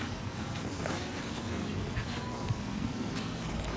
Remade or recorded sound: remade